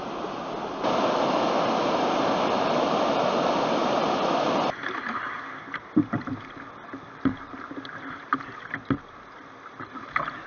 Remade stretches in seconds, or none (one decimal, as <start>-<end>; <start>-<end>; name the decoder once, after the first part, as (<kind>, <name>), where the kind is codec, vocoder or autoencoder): none